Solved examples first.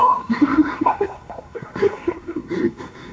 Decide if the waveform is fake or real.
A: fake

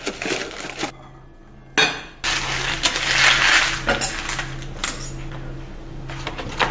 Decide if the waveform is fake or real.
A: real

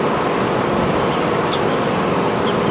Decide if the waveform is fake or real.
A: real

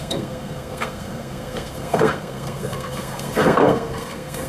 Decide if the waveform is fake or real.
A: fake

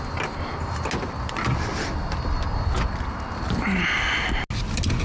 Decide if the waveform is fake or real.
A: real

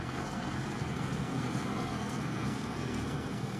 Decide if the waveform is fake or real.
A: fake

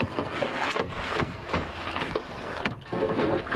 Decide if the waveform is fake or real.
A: fake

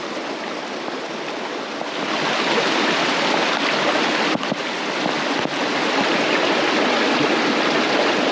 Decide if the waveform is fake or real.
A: real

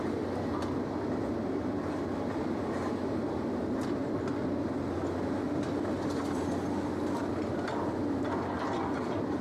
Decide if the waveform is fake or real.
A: real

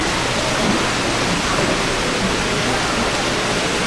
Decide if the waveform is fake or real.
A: real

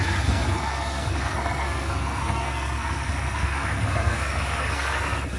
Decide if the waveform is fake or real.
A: fake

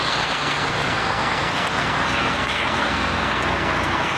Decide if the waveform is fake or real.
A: fake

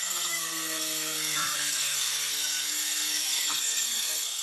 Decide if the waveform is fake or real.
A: fake